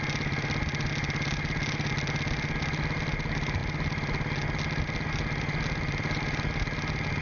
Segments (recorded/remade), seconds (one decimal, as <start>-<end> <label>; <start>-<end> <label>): 0.0-7.2 recorded